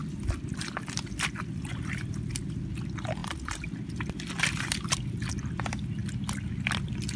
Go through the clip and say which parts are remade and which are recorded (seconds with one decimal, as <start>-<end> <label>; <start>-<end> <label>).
0.0-7.2 recorded